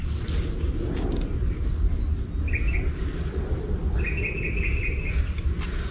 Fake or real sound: real